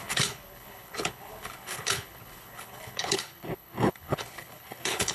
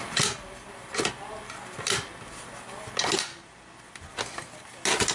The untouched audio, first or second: second